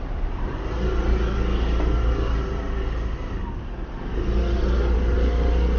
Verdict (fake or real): real